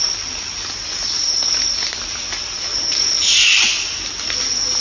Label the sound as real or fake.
real